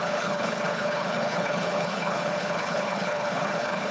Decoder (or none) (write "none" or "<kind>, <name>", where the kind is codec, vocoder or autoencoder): codec, HILCodec